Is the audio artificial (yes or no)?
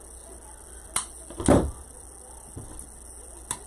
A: no